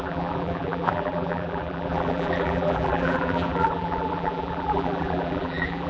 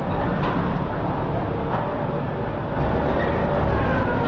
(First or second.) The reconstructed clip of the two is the first